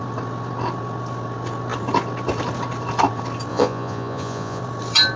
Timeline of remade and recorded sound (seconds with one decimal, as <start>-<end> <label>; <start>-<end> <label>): 0.0-3.5 recorded; 3.5-4.6 remade; 4.6-5.2 recorded